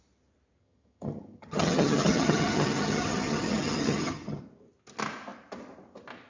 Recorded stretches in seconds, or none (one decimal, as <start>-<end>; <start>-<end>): 0.0-0.6; 4.4-6.3